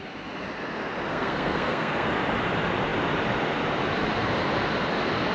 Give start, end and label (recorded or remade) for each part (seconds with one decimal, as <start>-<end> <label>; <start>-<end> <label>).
0.0-1.1 recorded; 1.1-2.1 remade; 2.1-5.3 recorded

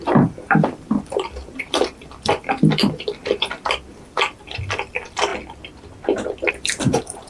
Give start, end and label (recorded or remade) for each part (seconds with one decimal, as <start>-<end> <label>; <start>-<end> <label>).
0.0-5.3 remade; 5.3-6.5 recorded; 6.5-7.3 remade

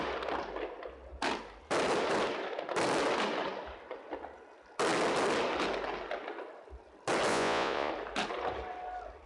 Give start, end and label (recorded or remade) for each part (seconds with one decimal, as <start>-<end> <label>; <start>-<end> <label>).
0.0-7.3 recorded; 7.3-7.9 remade; 7.9-9.3 recorded

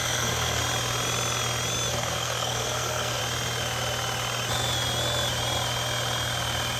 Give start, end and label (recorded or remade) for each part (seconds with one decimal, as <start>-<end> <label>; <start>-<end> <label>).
0.0-0.6 remade; 0.6-1.9 recorded; 1.9-3.2 remade; 3.2-6.8 recorded